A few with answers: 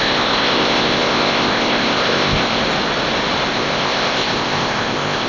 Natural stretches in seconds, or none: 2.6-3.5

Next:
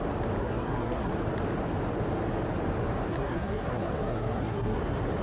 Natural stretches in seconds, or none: 0.0-0.4; 1.1-3.1; 4.8-5.2